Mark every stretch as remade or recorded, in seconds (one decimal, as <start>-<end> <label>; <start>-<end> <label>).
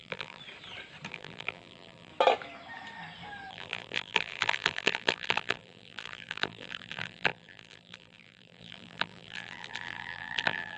0.0-0.4 remade; 0.4-1.1 recorded; 1.1-2.1 remade; 2.1-3.5 recorded; 3.5-10.8 remade